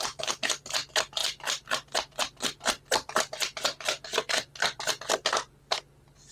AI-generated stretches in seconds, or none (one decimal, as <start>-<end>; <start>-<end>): none